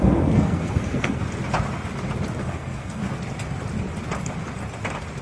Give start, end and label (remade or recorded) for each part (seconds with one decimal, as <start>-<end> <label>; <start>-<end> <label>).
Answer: 0.0-1.2 remade; 1.2-2.4 recorded; 2.4-3.0 remade; 3.0-5.2 recorded